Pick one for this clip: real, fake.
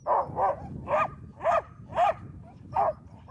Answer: real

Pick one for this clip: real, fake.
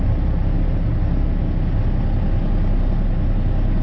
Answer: real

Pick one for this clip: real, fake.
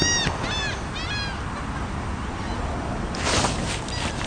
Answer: real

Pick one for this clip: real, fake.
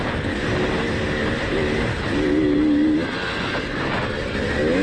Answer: real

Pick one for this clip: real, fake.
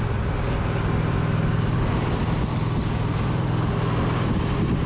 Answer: real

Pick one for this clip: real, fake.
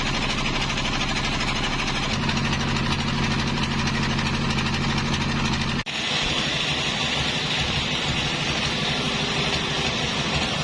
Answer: real